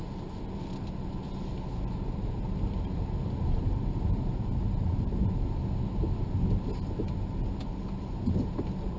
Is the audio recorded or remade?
recorded